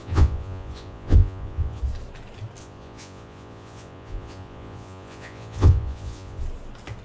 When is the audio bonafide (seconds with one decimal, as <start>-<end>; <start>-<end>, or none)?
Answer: 1.8-2.6; 6.4-7.0